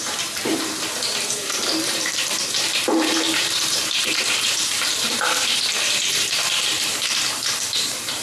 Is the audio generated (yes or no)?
yes